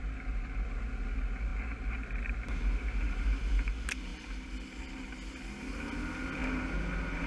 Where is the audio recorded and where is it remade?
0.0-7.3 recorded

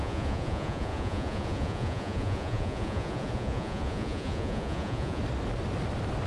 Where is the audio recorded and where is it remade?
0.0-5.2 remade; 5.2-6.3 recorded

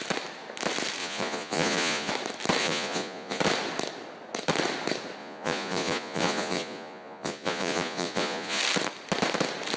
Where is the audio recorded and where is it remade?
0.0-1.0 recorded; 1.0-2.1 remade; 2.1-2.6 recorded; 2.6-3.4 remade; 3.4-5.2 recorded; 5.2-8.6 remade; 8.6-9.8 recorded

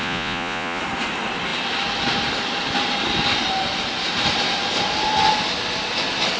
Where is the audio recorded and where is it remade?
0.0-0.8 remade; 0.8-6.4 recorded

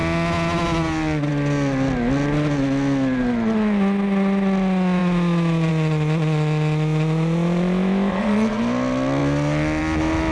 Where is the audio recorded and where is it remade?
0.0-8.1 recorded; 8.1-8.6 remade; 8.6-10.3 recorded

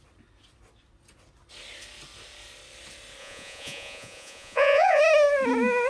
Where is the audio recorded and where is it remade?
0.0-3.2 recorded; 3.2-5.0 remade; 5.0-5.9 recorded

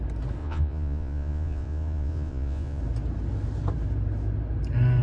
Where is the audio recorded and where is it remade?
0.0-0.4 recorded; 0.4-2.8 remade; 2.8-5.0 recorded